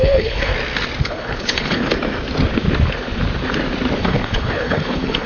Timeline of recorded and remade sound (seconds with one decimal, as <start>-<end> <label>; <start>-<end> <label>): 0.0-0.5 remade; 0.5-1.0 recorded; 1.0-1.8 remade; 1.8-4.0 recorded; 4.0-5.3 remade